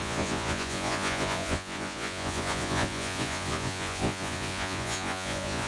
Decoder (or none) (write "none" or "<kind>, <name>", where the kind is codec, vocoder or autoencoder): vocoder, Vocos